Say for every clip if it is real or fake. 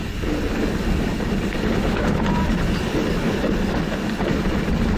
real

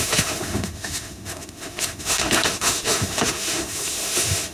fake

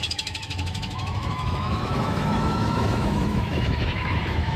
fake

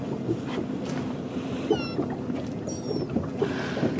real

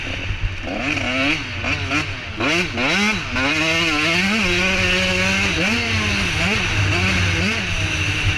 real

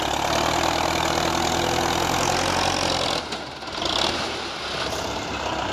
real